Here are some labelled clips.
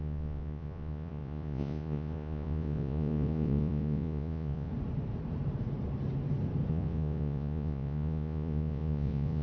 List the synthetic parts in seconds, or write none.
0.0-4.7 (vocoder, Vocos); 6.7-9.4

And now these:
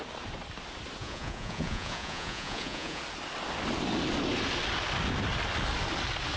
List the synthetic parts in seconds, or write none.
1.0-3.0 (vocoder, Vocos)

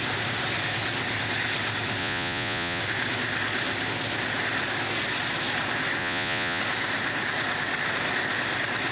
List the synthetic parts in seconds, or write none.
2.0-2.8 (vocoder, Vocos); 6.0-6.6

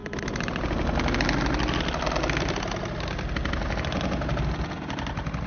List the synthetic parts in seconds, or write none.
none

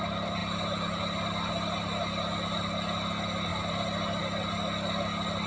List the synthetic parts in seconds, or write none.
none

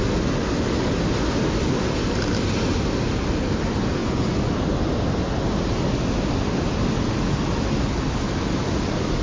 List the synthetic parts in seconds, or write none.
4.0-4.5 (vocoder, Vocos)